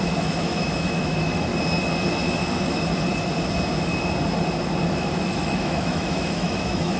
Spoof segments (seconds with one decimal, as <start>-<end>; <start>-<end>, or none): 0.0-1.5; 4.9-7.0